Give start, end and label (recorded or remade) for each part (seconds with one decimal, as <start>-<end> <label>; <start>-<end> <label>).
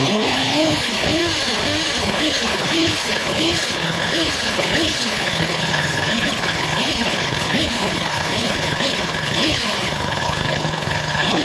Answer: 0.0-1.2 remade; 1.2-2.0 recorded; 2.0-11.4 remade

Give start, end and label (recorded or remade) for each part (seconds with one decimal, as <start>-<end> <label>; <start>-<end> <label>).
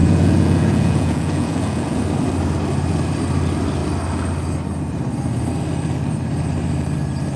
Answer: 0.0-2.0 remade; 2.0-7.4 recorded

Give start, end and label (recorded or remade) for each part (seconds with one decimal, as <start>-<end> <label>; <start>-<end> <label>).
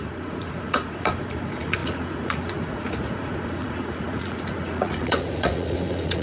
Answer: 0.0-6.2 remade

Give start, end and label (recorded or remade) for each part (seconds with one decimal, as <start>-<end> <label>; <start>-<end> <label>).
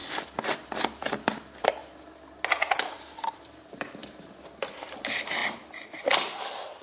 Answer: 0.0-0.7 recorded; 0.7-1.8 remade; 1.8-3.3 recorded; 3.3-4.0 remade; 4.0-4.7 recorded; 4.7-5.4 remade; 5.4-5.9 recorded; 5.9-6.8 remade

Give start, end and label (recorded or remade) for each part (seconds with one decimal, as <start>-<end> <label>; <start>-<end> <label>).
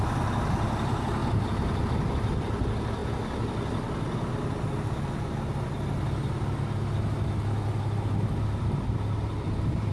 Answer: 0.0-9.9 recorded